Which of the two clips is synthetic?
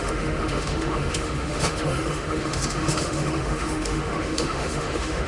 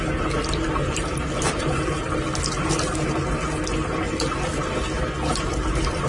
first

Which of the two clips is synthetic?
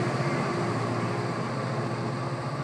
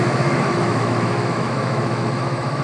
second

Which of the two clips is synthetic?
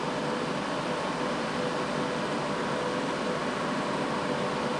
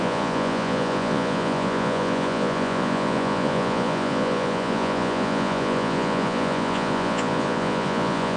second